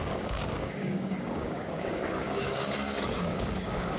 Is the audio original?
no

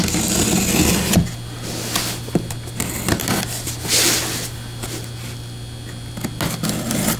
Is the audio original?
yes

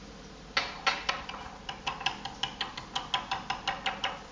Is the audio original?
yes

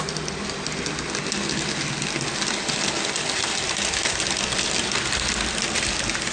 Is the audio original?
yes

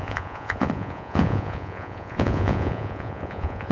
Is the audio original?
no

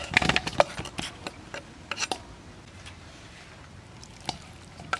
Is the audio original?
yes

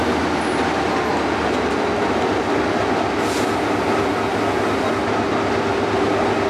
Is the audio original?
yes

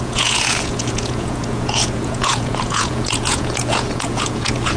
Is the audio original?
no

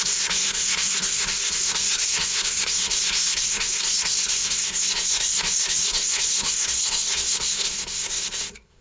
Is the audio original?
no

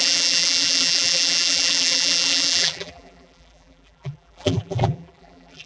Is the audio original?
no